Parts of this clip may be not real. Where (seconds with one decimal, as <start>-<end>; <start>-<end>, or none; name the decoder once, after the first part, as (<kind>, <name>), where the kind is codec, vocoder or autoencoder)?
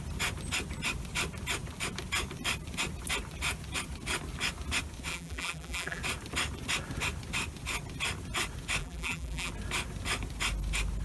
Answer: 5.1-6.0 (vocoder, BigVGAN v2); 8.8-9.5